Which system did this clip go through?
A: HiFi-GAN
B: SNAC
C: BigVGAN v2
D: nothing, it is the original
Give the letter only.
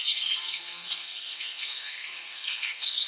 B